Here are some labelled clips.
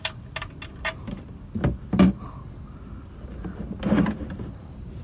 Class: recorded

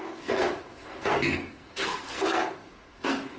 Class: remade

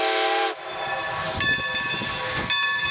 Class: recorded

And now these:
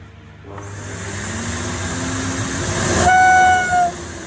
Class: recorded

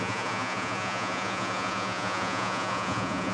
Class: remade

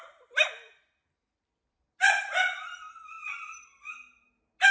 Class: recorded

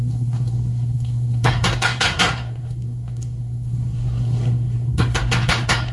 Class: remade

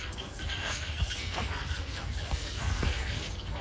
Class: remade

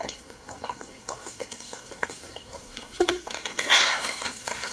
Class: remade